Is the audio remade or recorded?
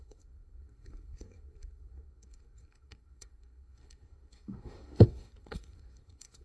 remade